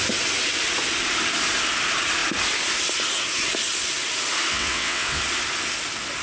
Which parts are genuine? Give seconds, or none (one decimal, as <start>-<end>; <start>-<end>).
0.0-4.5; 5.2-6.2